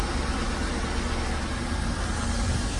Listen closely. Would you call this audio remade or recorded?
recorded